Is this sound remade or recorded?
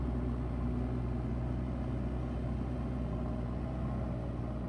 recorded